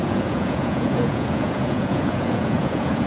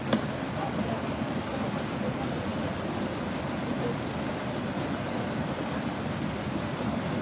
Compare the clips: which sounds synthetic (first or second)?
first